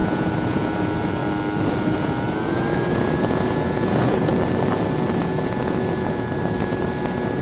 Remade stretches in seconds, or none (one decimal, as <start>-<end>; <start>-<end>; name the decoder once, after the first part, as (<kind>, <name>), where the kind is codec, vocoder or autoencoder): 0.0-1.2 (vocoder, Vocos); 1.9-4.3; 5.2-7.4